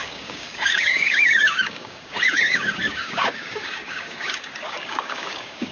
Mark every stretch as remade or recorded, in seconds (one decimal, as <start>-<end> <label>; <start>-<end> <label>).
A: 0.0-5.7 remade